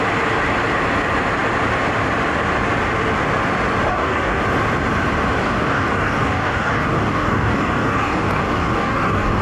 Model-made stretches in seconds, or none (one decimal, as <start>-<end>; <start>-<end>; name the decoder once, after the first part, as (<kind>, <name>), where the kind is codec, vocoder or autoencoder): 3.9-4.4 (codec, DAC); 5.4-9.4

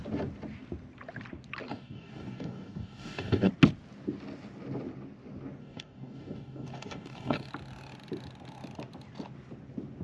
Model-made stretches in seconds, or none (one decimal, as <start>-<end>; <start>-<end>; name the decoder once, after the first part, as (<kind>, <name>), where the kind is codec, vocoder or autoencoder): 1.7-3.5 (codec, DAC); 5.6-7.5

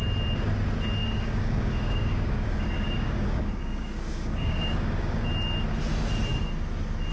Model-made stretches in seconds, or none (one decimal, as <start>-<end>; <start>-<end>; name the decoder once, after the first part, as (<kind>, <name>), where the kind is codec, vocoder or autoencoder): 1.0-5.3 (codec, DAC)

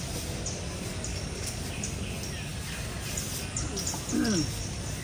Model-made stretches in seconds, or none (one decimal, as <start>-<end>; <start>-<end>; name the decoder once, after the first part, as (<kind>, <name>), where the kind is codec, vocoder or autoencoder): 1.1-1.6 (codec, DAC)

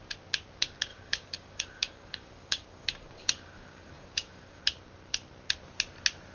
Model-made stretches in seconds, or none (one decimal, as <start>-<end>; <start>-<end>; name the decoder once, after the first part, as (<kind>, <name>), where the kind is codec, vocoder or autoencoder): 0.9-4.6 (codec, DAC)

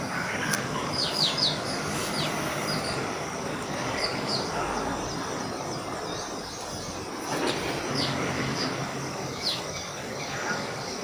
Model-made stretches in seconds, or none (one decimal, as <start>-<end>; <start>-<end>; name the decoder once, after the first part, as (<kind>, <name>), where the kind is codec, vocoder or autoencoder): 0.0-2.0 (codec, DAC); 2.8-4.9; 7.9-11.0